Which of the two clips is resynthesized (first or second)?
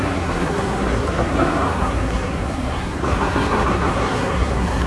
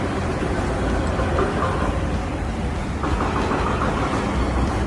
first